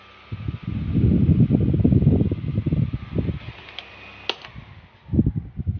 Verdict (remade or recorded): recorded